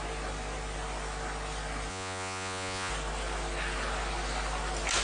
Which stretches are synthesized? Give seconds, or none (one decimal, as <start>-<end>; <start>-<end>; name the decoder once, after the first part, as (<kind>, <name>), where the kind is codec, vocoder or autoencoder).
1.9-2.9 (vocoder, Vocos)